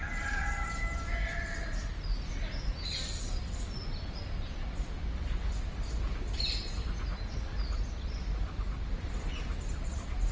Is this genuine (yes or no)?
no